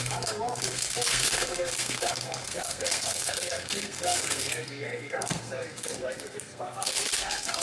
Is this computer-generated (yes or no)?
yes